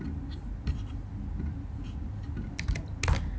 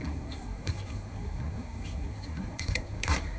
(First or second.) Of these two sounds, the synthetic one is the second